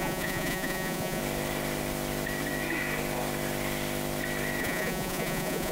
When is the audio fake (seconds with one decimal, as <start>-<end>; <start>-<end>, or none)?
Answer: 0.0-1.2; 4.6-5.7